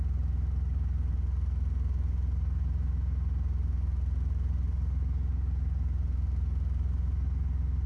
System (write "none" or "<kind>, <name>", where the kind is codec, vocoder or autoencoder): none